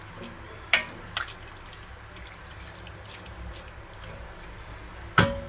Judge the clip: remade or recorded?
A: recorded